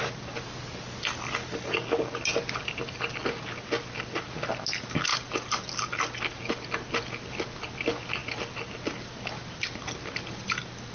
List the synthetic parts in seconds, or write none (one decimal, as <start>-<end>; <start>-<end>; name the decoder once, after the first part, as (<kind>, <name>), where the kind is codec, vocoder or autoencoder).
none